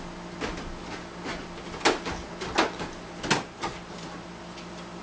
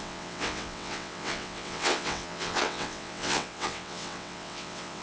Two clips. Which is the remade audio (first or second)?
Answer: second